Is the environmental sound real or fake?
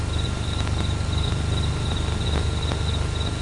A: fake